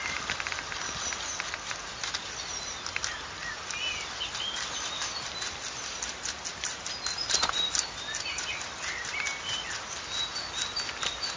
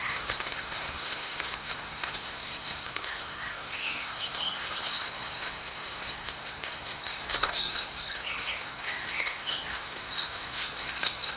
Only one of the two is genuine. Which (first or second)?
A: first